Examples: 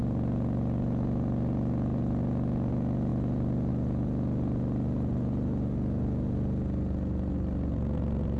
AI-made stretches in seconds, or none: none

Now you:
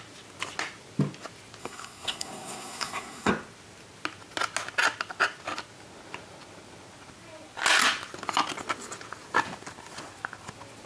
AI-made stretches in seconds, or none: 1.6-3.3 (codec, SNAC)

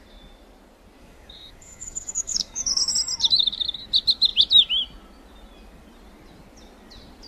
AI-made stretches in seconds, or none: 1.0-2.9 (codec, DAC)

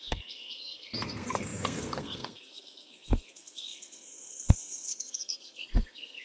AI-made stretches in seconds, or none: 0.0-6.2 (codec, SNAC)

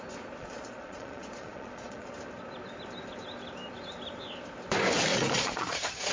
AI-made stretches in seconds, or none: 0.4-2.1 (vocoder, Vocos); 5.1-6.1